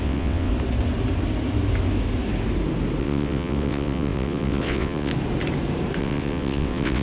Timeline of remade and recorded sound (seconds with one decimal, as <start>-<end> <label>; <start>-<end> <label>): 0.0-0.5 remade; 0.5-3.0 recorded; 3.0-5.1 remade; 5.1-6.0 recorded; 6.0-7.0 remade